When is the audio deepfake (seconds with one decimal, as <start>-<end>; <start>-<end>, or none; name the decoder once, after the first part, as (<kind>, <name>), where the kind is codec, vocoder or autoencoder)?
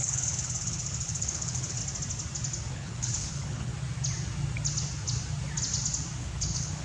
0.0-1.8 (codec, HILCodec); 2.7-3.7; 6.2-6.8